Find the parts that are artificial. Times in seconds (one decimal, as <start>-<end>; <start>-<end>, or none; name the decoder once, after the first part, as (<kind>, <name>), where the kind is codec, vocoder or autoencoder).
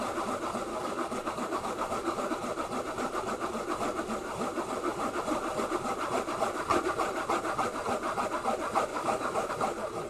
0.7-2.3 (codec, DAC); 8.9-9.5